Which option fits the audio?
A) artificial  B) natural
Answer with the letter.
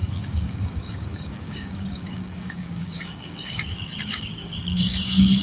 A